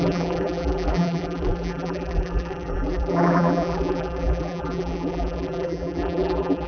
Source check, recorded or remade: remade